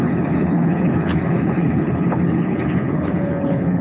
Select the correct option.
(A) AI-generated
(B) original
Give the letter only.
A